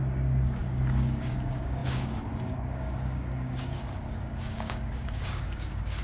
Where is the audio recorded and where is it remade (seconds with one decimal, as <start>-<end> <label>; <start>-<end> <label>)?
0.0-6.0 remade